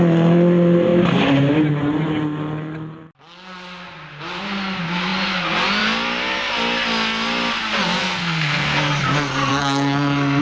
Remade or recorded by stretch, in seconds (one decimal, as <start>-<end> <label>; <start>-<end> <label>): 0.0-8.0 recorded; 8.0-8.9 remade; 8.9-9.5 recorded; 9.5-10.4 remade